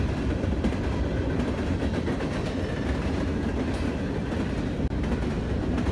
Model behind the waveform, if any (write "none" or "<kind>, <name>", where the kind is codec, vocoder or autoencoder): none